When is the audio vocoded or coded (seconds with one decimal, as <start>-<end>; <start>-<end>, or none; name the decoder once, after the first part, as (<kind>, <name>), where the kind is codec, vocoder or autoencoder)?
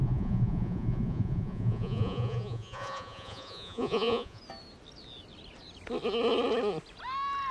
0.0-4.4 (vocoder, Vocos)